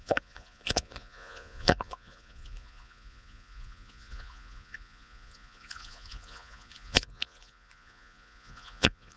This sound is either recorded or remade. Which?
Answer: remade